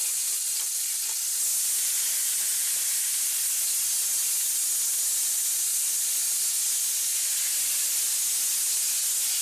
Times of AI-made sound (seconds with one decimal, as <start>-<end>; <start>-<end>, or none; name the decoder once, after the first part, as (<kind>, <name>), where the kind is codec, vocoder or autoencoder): none